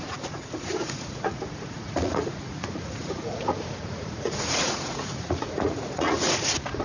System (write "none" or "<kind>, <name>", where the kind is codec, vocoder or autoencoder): vocoder, Vocos